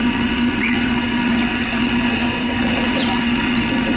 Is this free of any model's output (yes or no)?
no